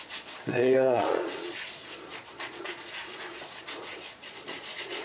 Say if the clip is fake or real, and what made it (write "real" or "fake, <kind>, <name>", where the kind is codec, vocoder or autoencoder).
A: fake, vocoder, Vocos